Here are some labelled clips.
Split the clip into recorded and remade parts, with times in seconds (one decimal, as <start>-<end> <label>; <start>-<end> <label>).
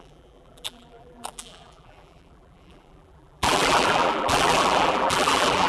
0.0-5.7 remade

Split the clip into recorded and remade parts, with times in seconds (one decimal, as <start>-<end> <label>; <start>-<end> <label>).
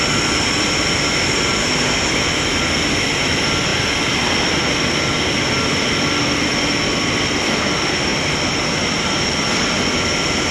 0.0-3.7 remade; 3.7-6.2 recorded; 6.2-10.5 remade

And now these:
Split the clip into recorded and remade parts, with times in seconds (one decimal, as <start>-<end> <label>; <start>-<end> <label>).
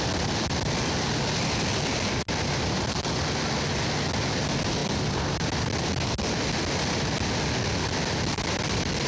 0.0-9.1 recorded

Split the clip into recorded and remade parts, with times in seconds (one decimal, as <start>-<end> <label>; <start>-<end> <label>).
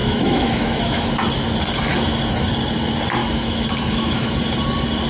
0.0-1.1 remade; 1.1-3.2 recorded; 3.2-4.3 remade; 4.3-5.1 recorded